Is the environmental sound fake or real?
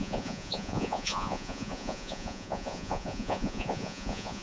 fake